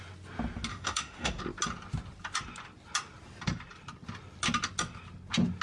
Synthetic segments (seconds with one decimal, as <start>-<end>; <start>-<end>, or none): 0.7-1.4